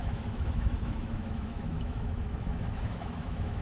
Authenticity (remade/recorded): remade